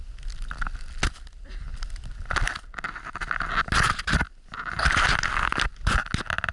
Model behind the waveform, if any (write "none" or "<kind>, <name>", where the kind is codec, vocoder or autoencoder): none